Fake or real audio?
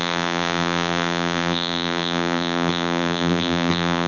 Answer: fake